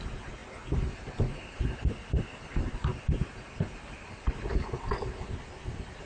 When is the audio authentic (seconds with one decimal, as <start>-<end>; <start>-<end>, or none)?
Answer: 0.0-6.1